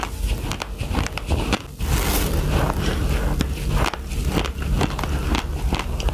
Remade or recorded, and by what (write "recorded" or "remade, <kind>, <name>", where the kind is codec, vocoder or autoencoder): recorded